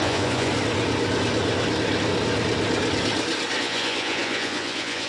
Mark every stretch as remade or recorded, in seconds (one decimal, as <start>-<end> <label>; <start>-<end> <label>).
0.0-0.5 remade; 0.5-3.6 recorded; 3.6-5.1 remade